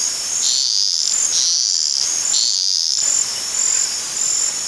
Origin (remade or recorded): recorded